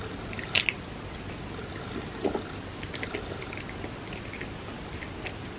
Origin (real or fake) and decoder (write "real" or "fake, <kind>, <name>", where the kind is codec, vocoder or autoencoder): real